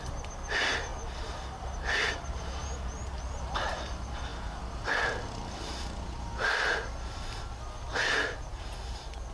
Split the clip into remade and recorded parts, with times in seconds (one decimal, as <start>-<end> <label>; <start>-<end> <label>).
0.0-9.3 recorded